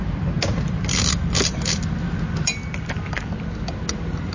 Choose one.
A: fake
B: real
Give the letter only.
B